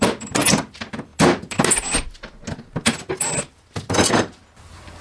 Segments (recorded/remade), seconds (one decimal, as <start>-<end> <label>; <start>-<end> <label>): 0.0-5.0 recorded